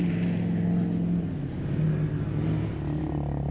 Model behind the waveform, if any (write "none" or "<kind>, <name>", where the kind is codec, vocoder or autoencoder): none